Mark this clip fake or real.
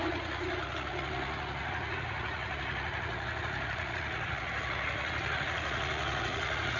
fake